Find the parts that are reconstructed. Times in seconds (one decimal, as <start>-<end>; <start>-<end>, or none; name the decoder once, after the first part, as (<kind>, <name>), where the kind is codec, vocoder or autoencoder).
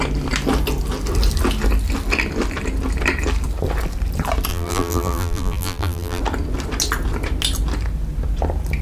4.5-6.2 (vocoder, BigVGAN v2)